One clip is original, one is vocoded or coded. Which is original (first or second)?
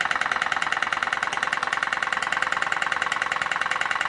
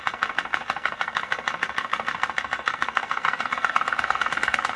first